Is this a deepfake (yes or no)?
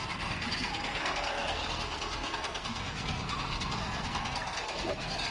yes